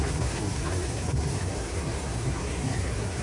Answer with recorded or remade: remade